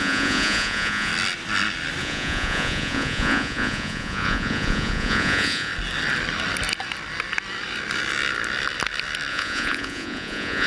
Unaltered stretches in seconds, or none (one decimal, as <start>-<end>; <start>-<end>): 1.1-2.0; 5.7-9.3